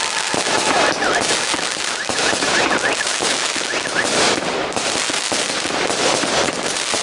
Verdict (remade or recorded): remade